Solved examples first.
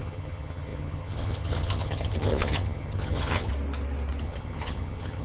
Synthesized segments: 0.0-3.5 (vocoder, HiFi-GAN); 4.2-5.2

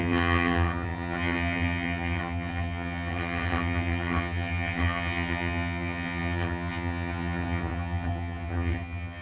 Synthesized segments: 0.0-9.2 (vocoder, HiFi-GAN)

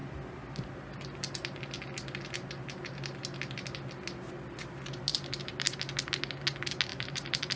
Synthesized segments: 5.1-5.8 (vocoder, BigVGAN v2); 6.9-7.6